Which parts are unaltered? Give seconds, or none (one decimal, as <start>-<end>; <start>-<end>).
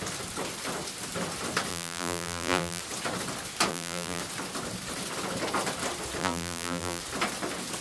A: 0.0-1.7; 2.8-3.7; 4.2-6.2; 7.0-7.8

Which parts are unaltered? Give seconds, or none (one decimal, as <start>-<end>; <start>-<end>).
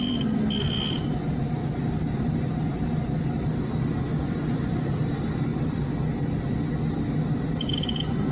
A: 0.0-1.6; 2.4-4.2; 5.1-8.3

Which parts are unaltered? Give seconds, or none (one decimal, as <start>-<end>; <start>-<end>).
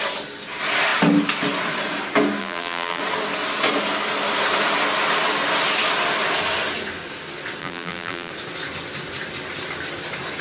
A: 0.0-2.4; 3.0-7.6; 8.3-10.4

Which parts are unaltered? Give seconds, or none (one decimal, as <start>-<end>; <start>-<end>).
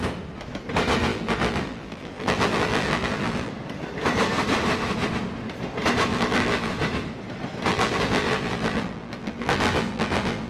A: 0.0-1.1; 3.5-6.1; 6.7-7.7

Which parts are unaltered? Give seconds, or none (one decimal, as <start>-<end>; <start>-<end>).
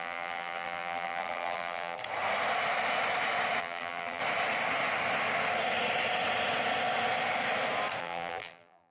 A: 2.0-3.6; 4.2-8.0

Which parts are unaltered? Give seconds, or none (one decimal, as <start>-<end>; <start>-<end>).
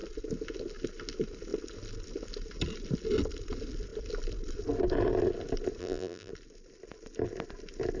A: 0.0-5.8; 6.3-8.0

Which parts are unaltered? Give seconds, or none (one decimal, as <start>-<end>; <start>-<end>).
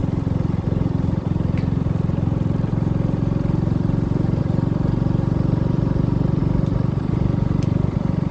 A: 0.0-8.3